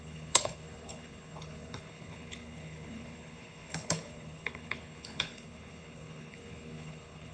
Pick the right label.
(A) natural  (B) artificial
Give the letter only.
B